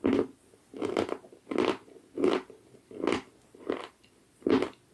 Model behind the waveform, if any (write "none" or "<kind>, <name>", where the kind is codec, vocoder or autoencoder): none